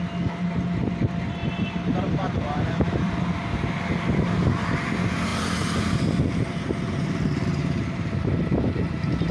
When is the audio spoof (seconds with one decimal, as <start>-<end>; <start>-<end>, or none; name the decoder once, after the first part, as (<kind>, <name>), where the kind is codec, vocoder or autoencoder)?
1.4-3.7 (vocoder, BigVGAN v2); 5.3-8.1